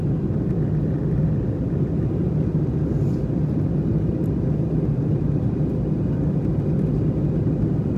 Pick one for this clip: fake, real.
real